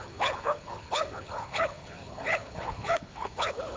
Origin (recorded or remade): remade